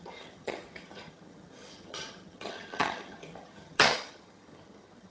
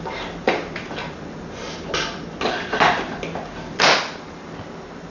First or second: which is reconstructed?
first